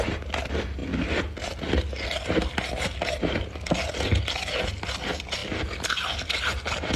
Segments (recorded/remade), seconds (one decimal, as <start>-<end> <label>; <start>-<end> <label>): 0.0-7.0 recorded